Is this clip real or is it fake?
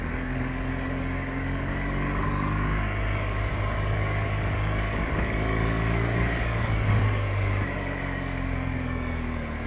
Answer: fake